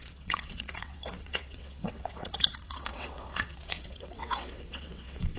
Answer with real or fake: fake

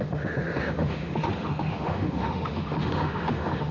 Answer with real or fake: fake